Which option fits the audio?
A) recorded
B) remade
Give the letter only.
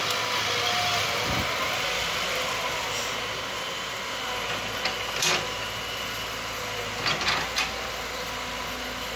A